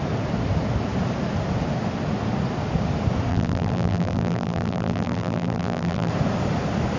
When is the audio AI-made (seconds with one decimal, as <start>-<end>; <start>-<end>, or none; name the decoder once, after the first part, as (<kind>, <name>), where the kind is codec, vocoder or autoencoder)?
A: 3.3-6.1 (vocoder, BigVGAN v2)